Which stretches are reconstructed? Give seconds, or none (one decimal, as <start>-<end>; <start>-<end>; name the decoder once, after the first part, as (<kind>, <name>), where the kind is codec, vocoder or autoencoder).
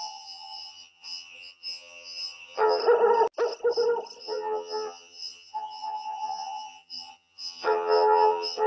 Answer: 0.0-2.8 (vocoder, HiFi-GAN); 4.2-8.7